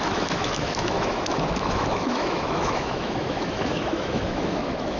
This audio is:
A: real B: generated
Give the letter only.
B